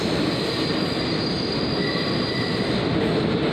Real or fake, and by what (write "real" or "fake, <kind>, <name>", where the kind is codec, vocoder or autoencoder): real